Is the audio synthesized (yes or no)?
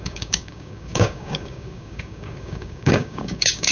yes